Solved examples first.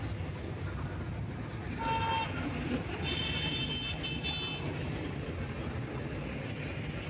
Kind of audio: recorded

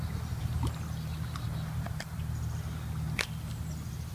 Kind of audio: recorded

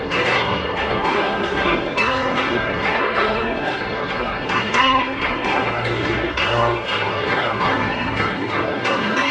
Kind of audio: remade